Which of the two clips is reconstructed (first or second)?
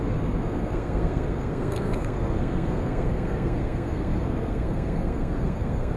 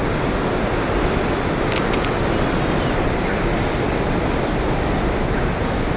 first